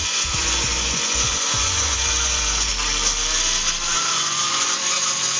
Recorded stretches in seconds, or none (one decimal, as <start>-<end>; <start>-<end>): 2.7-3.9